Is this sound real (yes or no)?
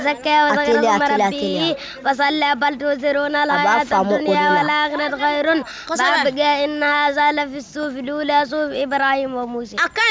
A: yes